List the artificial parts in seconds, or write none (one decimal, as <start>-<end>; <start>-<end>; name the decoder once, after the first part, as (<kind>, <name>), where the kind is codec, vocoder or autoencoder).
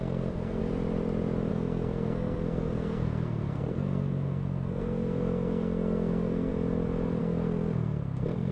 0.0-0.6 (codec, SNAC); 1.5-6.5; 7.2-8.5